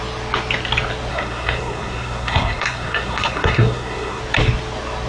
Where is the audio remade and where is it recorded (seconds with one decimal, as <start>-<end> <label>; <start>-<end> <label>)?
0.0-1.1 recorded; 1.1-4.2 remade; 4.2-5.1 recorded